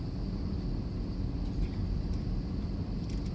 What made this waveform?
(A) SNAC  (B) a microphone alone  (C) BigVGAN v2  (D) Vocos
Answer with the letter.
B